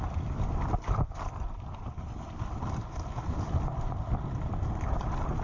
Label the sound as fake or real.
real